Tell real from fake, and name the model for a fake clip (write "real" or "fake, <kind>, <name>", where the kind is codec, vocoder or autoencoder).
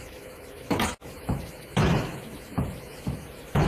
fake, autoencoder, DAC-VAE